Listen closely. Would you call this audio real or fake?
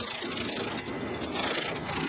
real